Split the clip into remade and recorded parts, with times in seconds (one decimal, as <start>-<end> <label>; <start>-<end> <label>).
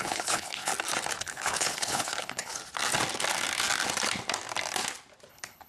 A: 0.0-0.7 remade; 0.7-1.2 recorded; 1.2-2.6 remade; 2.6-5.3 recorded; 5.3-5.7 remade